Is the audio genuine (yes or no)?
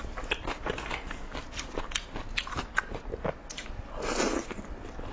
yes